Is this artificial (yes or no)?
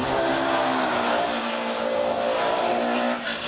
no